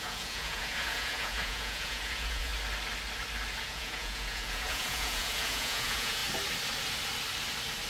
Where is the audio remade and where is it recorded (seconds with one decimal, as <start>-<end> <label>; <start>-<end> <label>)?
0.0-2.5 remade; 2.5-3.6 recorded; 3.6-6.2 remade; 6.2-7.9 recorded